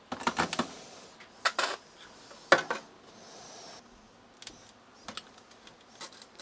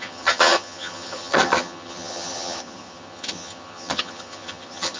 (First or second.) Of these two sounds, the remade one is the second